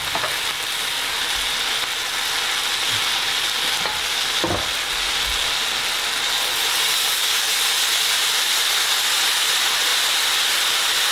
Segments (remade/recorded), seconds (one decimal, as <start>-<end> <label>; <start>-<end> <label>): 0.0-11.1 recorded